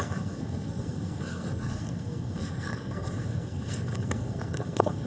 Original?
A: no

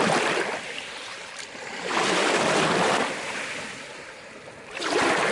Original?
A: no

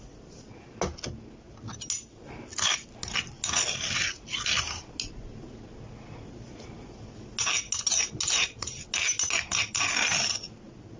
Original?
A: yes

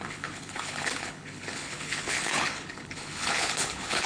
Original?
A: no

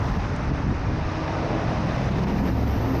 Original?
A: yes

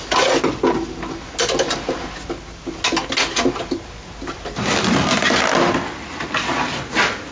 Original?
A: yes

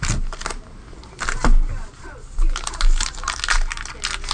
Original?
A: yes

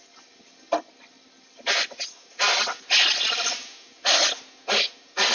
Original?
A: yes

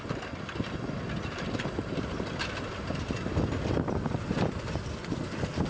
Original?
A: yes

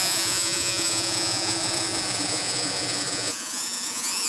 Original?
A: no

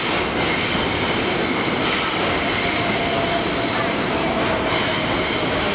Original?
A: yes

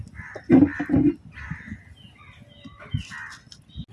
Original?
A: yes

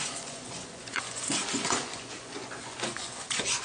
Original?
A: no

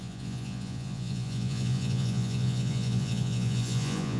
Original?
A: no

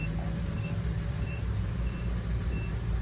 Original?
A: no